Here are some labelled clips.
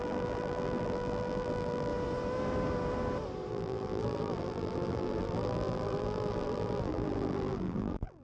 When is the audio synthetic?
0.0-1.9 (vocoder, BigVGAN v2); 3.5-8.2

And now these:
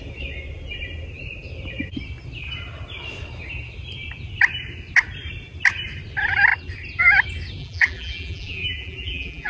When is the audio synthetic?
7.6-9.5 (vocoder, BigVGAN v2)

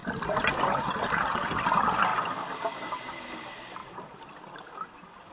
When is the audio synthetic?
0.0-0.6 (vocoder, BigVGAN v2); 2.1-2.8; 3.8-4.6

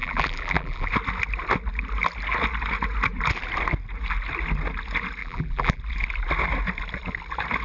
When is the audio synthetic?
0.0-0.9 (vocoder, BigVGAN v2); 5.2-5.8

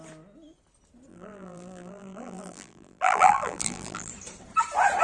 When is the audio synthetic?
1.1-4.1 (vocoder, BigVGAN v2)